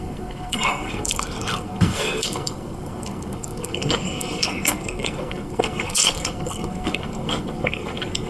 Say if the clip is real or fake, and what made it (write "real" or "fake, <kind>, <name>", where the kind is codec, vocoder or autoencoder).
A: fake, codec, SNAC